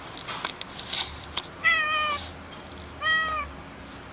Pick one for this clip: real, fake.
real